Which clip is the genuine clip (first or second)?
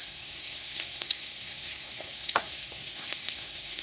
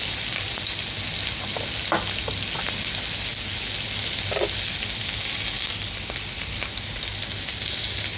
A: second